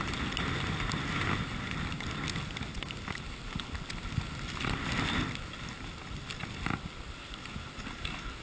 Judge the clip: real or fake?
real